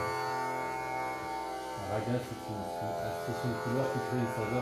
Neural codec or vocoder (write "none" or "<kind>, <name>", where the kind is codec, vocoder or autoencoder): none